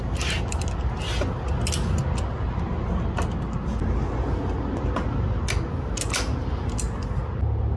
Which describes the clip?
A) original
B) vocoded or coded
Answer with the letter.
A